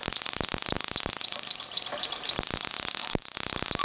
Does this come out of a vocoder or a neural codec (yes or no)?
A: yes